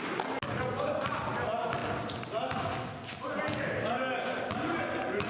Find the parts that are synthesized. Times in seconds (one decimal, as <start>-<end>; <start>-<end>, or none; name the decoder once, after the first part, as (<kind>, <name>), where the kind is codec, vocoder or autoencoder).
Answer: none